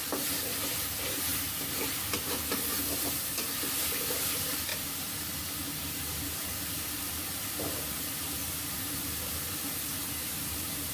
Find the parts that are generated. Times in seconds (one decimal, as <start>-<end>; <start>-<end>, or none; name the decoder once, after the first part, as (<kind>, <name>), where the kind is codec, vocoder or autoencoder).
0.0-10.9 (vocoder, BigVGAN v2)